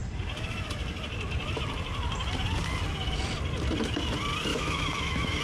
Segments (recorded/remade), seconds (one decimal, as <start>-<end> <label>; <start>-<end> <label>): 0.0-4.5 recorded; 4.5-5.4 remade